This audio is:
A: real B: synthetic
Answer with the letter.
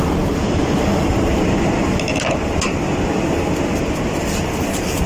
A